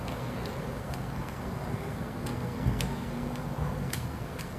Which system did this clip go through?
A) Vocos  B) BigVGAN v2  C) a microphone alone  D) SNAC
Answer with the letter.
D